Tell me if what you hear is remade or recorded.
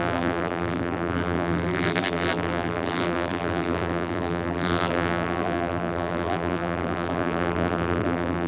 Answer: remade